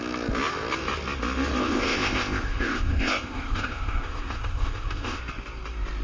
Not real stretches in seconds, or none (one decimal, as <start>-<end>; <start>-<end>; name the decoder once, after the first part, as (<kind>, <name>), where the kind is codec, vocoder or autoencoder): 1.6-5.2 (codec, ZipCodec)